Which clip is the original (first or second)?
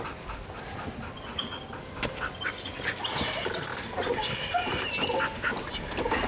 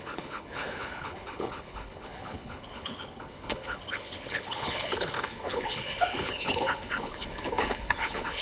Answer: first